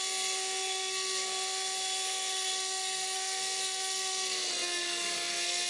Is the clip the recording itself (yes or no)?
no